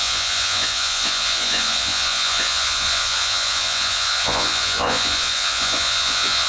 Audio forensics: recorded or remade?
remade